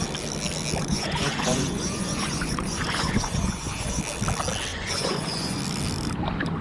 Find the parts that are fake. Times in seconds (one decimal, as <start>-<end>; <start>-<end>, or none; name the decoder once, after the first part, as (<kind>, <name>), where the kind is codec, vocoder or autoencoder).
0.8-4.0 (vocoder, Vocos); 4.7-5.6